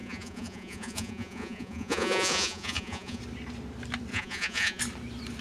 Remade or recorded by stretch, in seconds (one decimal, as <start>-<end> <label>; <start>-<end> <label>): 0.0-3.2 remade; 3.2-4.1 recorded; 4.1-4.8 remade; 4.8-5.4 recorded